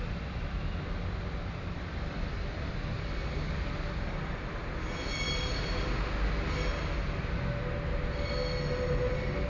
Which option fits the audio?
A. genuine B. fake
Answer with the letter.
A